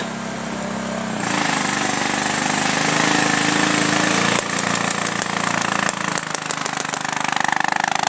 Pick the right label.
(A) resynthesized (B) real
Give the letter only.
B